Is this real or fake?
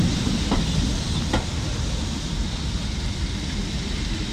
real